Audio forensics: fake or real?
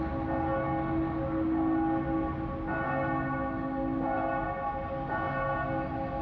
real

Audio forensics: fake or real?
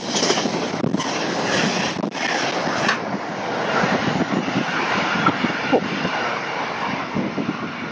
real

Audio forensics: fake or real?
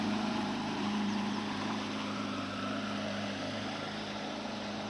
fake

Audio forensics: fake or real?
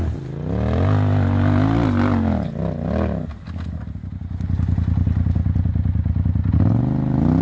real